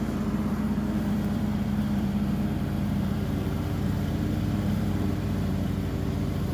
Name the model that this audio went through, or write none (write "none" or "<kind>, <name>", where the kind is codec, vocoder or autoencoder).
vocoder, BigVGAN v2